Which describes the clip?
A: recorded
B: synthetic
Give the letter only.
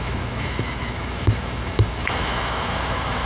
B